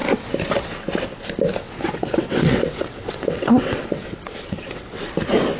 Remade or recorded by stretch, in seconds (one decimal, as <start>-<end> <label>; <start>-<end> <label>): 0.0-1.6 recorded; 1.6-5.0 remade; 5.0-5.6 recorded